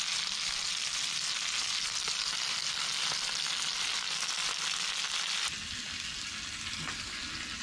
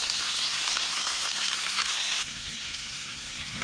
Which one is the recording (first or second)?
first